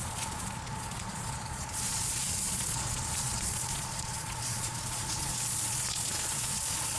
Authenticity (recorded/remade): remade